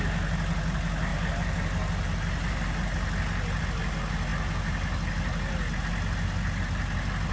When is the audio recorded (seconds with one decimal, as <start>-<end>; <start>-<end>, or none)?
0.0-7.3